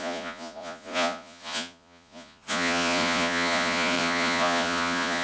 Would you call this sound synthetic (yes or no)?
yes